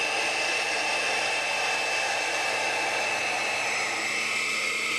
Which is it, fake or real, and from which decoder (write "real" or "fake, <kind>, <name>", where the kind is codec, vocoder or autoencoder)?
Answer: real